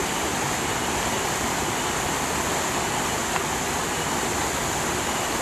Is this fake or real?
real